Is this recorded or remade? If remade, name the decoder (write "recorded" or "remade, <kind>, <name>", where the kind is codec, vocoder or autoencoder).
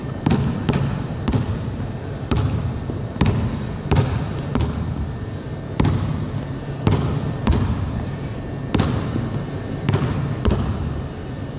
remade, vocoder, BigVGAN v2